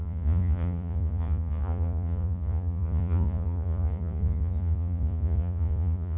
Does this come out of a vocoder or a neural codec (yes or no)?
yes